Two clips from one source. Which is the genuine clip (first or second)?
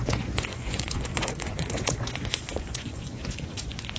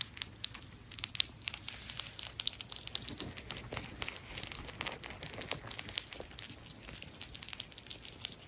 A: second